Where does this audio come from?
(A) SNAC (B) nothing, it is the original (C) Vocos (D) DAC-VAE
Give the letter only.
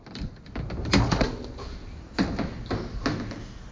B